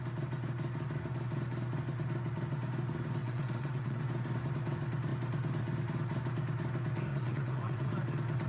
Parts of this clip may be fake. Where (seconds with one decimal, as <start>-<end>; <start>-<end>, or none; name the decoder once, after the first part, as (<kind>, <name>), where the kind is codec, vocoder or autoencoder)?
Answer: 3.2-4.0 (vocoder, WaveNeXt); 7.1-7.9